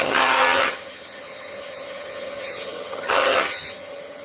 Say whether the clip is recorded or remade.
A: remade